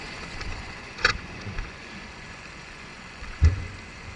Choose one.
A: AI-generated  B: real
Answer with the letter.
A